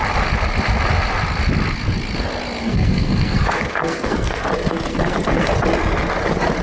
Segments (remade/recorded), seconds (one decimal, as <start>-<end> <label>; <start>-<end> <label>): 0.0-2.6 recorded; 2.6-4.4 remade; 4.4-4.9 recorded; 4.9-5.5 remade; 5.5-6.6 recorded